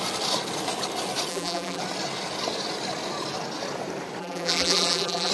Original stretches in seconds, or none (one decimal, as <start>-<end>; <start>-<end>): 0.0-1.3; 1.8-4.2